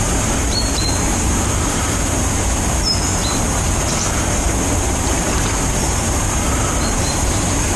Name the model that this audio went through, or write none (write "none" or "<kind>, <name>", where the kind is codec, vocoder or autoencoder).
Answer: vocoder, BigVGAN v2